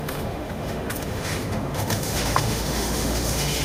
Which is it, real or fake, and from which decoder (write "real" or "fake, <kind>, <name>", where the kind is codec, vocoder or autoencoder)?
fake, autoencoder, DAC-VAE